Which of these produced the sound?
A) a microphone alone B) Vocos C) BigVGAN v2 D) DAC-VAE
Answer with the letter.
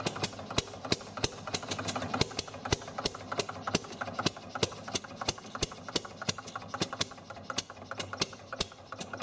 A